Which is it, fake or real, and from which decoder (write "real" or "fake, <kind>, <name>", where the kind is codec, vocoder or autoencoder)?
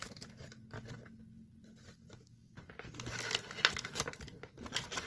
real